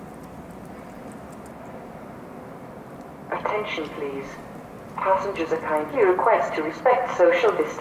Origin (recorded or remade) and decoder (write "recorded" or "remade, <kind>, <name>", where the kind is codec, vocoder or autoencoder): recorded